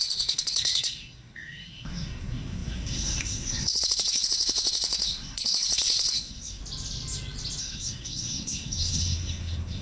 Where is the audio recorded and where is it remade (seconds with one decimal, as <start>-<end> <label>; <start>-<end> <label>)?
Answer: 0.0-6.6 remade; 6.6-7.6 recorded; 7.6-9.8 remade